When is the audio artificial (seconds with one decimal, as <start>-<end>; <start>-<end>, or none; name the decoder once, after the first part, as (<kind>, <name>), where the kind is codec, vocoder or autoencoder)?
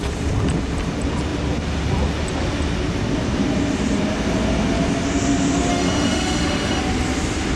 5.7-6.8 (autoencoder, DAC-VAE)